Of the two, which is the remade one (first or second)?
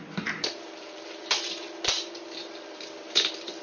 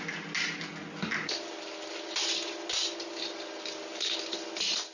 first